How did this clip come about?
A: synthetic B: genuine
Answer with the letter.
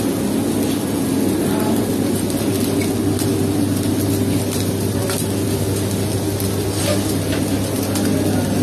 B